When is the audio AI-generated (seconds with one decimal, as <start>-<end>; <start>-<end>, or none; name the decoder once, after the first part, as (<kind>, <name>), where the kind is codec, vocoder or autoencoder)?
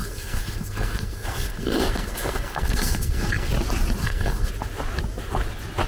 0.0-3.5 (codec, SNAC); 4.0-4.5